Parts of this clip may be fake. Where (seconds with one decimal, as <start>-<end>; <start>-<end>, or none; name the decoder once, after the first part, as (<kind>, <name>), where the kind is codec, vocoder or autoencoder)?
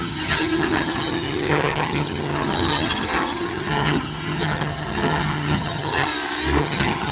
0.0-6.1 (vocoder, HiFi-GAN); 6.6-7.1